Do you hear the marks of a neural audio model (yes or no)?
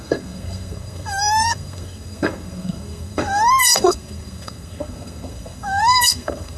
yes